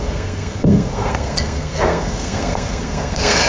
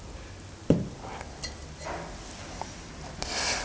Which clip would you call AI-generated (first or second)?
first